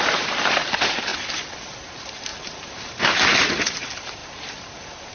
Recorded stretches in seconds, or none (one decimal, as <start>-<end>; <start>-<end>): 1.1-1.8